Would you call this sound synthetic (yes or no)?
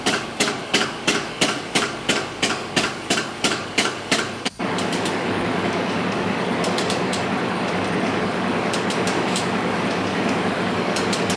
yes